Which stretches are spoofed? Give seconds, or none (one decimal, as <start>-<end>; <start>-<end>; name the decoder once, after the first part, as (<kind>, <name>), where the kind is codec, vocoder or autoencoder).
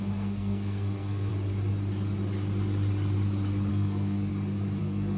0.0-1.3 (codec, SNAC); 3.7-4.3; 4.8-5.2